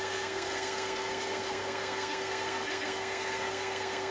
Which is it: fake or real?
fake